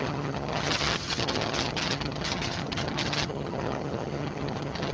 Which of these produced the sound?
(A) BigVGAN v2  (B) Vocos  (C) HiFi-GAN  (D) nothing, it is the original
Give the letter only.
C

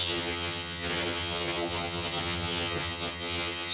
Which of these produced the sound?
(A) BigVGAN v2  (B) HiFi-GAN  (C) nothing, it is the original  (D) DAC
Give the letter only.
B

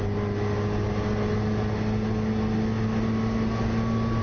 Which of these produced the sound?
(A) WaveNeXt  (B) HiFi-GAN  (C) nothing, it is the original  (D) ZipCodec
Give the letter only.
C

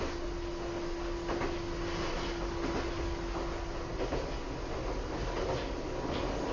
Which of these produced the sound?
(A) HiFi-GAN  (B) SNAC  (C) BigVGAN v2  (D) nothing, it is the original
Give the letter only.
D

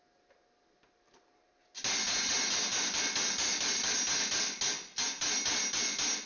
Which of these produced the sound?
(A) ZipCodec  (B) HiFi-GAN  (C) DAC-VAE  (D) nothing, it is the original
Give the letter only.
D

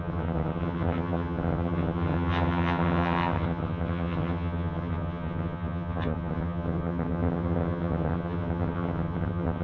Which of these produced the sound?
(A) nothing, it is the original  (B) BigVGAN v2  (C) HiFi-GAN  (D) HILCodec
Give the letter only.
C